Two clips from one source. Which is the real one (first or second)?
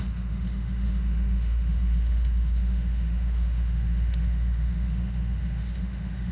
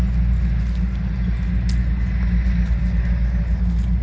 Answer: second